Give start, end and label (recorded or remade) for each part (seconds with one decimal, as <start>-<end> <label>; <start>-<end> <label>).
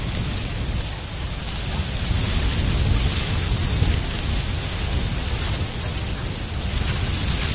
0.0-4.3 recorded; 4.3-5.1 remade; 5.1-7.5 recorded